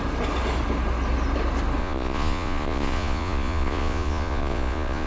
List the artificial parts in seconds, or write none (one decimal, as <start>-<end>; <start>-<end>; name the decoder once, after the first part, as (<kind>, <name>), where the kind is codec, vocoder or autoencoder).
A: 1.8-5.1 (vocoder, Vocos)